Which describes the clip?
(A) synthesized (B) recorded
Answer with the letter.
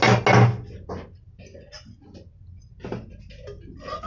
B